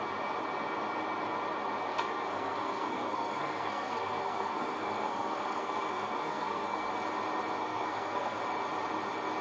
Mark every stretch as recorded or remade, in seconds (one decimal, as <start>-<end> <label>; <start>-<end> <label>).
0.0-1.9 recorded; 1.9-6.9 remade; 6.9-7.6 recorded; 7.6-8.4 remade; 8.4-9.4 recorded